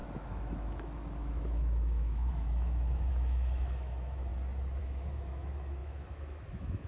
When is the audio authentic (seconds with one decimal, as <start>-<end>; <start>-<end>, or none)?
4.3-4.8